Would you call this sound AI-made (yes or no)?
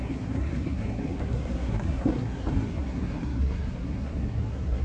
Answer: yes